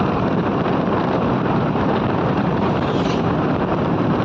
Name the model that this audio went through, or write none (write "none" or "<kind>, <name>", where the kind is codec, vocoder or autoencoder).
vocoder, BigVGAN v2